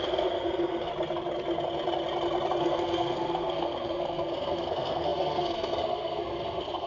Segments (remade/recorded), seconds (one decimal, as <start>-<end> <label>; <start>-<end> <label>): 0.0-0.9 remade; 0.9-2.6 recorded; 2.6-6.9 remade